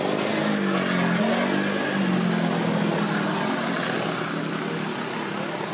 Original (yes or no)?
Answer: yes